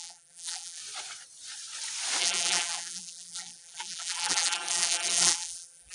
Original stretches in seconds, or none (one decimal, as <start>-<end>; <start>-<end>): 0.8-2.2